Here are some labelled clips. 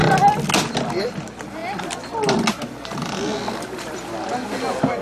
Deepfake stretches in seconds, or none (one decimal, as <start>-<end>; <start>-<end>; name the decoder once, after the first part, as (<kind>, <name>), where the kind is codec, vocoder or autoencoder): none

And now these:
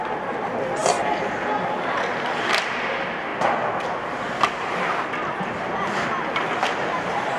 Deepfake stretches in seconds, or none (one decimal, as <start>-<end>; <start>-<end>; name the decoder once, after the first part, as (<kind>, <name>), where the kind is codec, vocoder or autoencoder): none

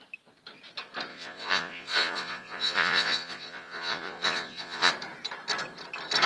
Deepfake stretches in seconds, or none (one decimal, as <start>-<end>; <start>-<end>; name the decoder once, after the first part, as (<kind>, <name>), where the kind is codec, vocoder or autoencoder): 1.1-4.9 (vocoder, Vocos)

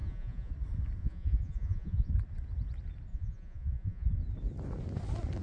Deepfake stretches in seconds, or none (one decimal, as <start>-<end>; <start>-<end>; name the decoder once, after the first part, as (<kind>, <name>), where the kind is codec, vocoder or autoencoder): 0.0-0.5 (vocoder, Vocos); 1.0-2.1; 3.1-4.1

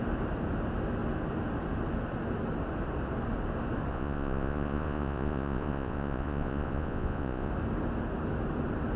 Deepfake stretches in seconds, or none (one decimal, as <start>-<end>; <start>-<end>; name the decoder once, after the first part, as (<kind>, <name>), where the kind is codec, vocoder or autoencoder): 3.9-7.5 (vocoder, Vocos)

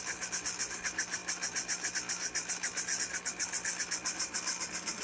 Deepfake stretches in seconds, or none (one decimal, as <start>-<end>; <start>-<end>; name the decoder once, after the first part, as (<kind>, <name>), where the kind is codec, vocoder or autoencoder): none

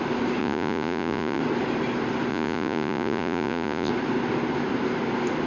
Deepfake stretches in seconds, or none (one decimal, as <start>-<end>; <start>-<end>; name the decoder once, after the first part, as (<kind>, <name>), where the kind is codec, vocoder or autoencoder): 0.4-1.4 (vocoder, Vocos); 2.3-3.9